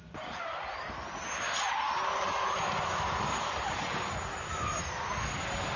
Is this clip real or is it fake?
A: real